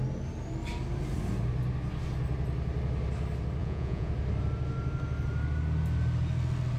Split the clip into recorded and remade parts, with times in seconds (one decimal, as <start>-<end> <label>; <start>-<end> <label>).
0.0-3.6 recorded; 3.6-4.1 remade; 4.1-6.8 recorded